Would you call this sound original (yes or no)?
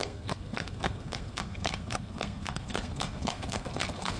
no